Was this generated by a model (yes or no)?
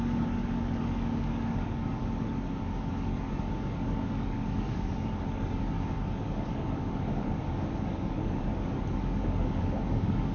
yes